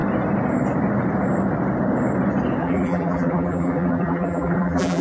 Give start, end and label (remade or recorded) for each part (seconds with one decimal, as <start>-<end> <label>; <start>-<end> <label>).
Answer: 0.0-2.6 recorded; 2.6-5.0 remade